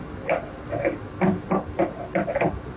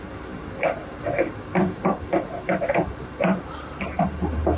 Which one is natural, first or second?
first